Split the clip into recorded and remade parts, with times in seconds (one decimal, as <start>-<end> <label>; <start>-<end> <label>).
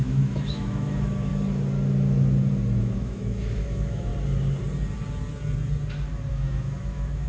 0.0-1.3 remade; 1.3-2.8 recorded; 2.8-4.1 remade; 4.1-6.3 recorded; 6.3-7.3 remade